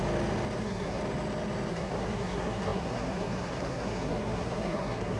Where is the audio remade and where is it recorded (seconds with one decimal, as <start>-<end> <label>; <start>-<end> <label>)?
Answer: 0.0-0.6 recorded; 0.6-1.0 remade; 1.0-1.7 recorded; 1.7-5.2 remade